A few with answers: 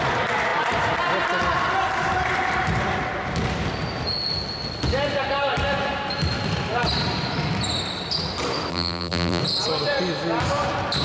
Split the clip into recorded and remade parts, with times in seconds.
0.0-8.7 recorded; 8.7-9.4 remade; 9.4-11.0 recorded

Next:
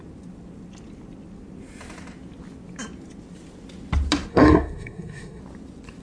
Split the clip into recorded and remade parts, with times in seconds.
0.0-4.3 recorded; 4.3-5.4 remade; 5.4-6.0 recorded

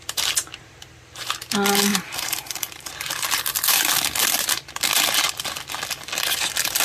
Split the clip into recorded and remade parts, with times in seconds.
0.0-1.9 recorded; 1.9-2.9 remade; 2.9-6.8 recorded

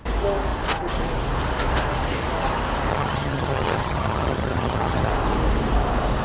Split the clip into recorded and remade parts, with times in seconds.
0.0-2.9 recorded; 2.9-5.1 remade; 5.1-6.2 recorded

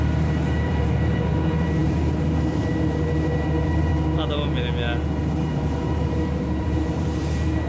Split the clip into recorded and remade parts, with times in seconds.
0.0-3.9 remade; 3.9-5.5 recorded; 5.5-7.7 remade

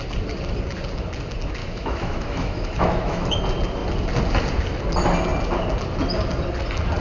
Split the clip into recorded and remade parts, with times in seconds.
0.0-1.6 recorded; 1.6-3.4 remade; 3.4-7.0 recorded